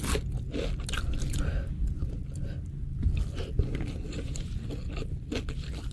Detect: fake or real real